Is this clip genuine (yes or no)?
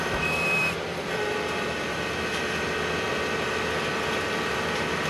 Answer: no